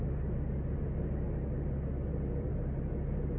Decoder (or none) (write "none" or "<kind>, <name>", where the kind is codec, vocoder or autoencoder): none